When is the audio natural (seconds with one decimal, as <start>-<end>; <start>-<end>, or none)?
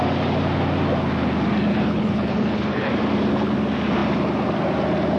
0.0-1.7; 2.9-5.2